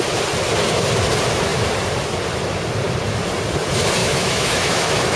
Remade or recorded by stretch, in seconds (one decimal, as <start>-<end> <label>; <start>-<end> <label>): 0.0-4.0 recorded; 4.0-5.2 remade